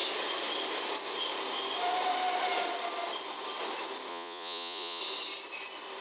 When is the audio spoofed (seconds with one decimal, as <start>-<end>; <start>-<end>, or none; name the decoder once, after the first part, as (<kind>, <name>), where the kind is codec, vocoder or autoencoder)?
4.1-5.0 (vocoder, Vocos)